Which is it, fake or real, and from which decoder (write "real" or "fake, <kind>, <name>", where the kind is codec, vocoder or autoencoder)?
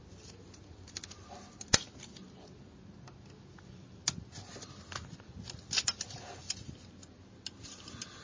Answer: real